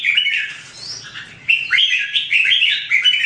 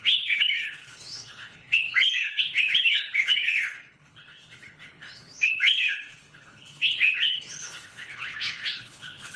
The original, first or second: first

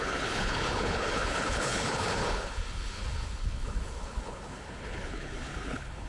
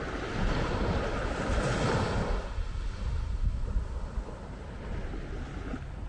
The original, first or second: second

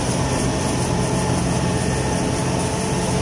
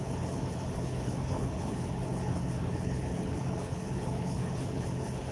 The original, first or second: first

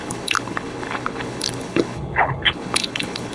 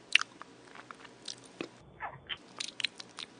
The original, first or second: second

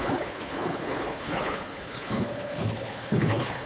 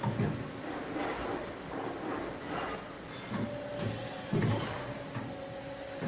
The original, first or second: second